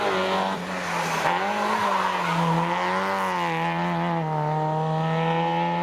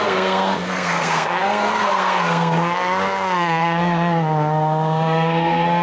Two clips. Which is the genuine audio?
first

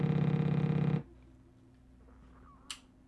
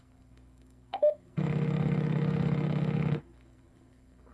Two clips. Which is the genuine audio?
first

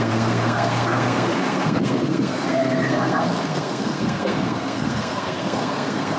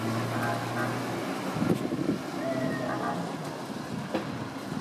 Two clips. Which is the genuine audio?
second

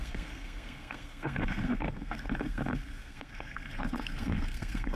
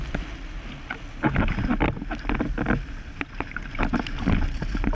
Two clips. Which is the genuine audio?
second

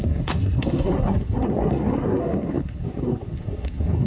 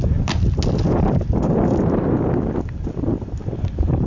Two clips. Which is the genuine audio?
second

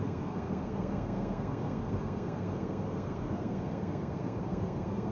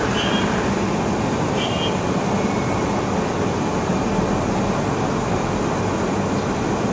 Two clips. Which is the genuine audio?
second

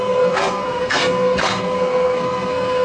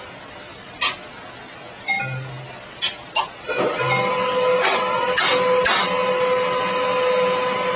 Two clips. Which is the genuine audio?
second